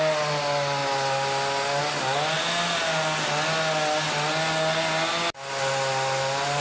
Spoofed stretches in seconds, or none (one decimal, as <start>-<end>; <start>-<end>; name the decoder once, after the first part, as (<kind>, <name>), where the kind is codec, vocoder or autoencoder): none